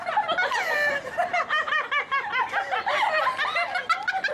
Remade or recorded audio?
recorded